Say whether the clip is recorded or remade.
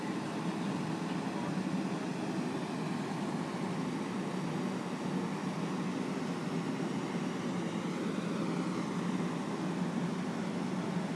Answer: recorded